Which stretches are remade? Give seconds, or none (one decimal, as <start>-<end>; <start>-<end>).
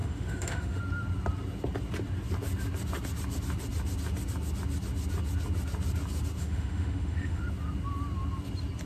0.0-0.8; 6.4-7.4